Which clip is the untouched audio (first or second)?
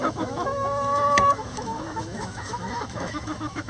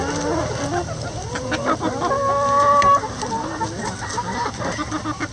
second